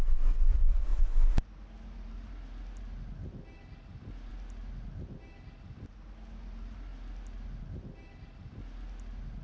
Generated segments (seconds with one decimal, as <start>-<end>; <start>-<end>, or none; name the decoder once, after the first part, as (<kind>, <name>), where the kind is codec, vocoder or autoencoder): none